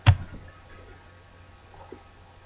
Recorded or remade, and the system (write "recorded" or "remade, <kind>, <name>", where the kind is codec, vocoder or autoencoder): recorded